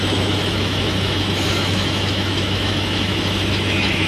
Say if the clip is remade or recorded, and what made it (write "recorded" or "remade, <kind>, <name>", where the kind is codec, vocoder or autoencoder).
remade, autoencoder, DAC-VAE